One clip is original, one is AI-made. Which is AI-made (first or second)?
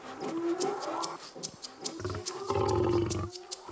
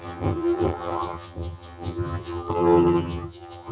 second